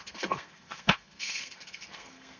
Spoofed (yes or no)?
yes